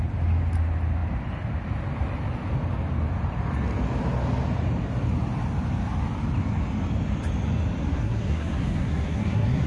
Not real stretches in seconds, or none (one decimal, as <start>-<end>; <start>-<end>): 7.8-9.7